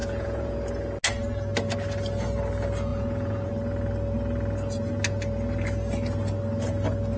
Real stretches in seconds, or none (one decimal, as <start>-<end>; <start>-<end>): 0.5-2.9; 3.5-7.2